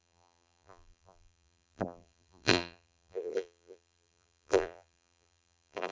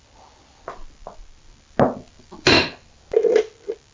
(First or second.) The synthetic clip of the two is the first